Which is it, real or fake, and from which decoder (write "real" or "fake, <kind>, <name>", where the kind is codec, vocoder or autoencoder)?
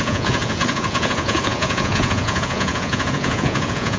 fake, vocoder, Vocos